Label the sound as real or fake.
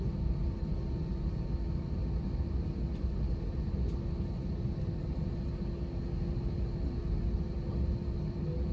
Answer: real